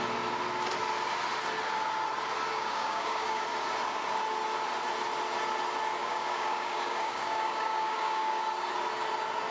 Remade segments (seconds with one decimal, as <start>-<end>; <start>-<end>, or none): 2.5-3.4; 6.0-8.4